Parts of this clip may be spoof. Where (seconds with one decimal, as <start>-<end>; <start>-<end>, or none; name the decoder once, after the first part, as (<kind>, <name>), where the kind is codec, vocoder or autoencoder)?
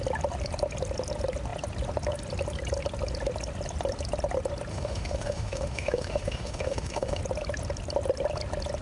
4.7-7.2 (autoencoder, DAC-VAE)